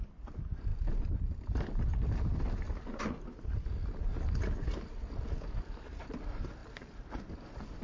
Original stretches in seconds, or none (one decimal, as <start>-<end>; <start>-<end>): 0.0-7.8